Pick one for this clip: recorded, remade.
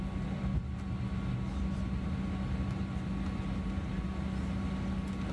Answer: recorded